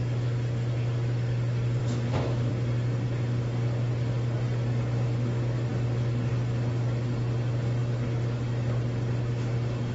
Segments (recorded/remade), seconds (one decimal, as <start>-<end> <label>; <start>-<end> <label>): 0.0-1.8 recorded; 1.8-2.5 remade; 2.5-9.9 recorded